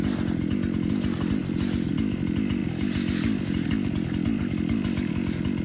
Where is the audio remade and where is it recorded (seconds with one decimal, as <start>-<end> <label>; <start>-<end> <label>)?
0.0-2.6 recorded; 2.6-5.1 remade; 5.1-5.6 recorded